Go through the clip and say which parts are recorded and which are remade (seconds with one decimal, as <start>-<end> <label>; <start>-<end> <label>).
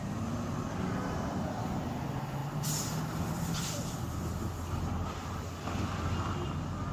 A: 0.0-2.4 recorded; 2.4-6.5 remade; 6.5-6.9 recorded